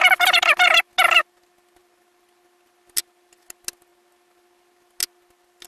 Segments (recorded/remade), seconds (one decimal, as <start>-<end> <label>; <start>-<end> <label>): 0.0-5.7 recorded